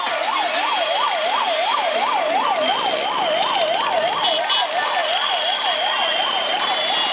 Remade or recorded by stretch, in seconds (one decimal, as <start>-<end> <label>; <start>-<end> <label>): 0.0-7.1 recorded